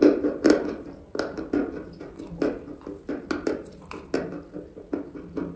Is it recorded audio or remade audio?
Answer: recorded